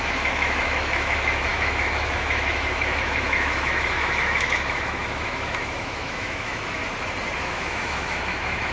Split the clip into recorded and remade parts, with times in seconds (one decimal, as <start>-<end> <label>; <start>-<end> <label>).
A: 0.0-6.8 remade; 6.8-7.4 recorded; 7.4-8.7 remade